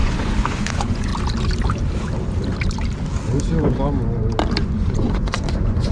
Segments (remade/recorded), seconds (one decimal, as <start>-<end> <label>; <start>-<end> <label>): 0.0-1.1 remade; 1.1-4.6 recorded; 4.6-5.9 remade